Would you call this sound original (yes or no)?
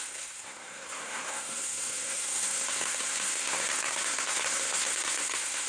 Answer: no